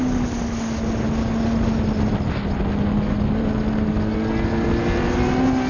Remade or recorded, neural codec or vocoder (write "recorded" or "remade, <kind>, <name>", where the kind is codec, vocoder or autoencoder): recorded